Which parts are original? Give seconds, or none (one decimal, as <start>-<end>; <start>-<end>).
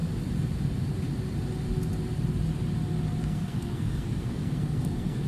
0.0-3.2